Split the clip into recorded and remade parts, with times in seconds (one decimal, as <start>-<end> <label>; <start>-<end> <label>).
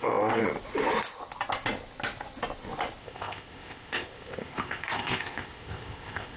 0.0-0.4 remade; 0.4-3.0 recorded; 3.0-6.4 remade